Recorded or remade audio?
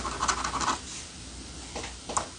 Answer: recorded